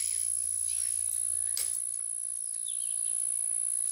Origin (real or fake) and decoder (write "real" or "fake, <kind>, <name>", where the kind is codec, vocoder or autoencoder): real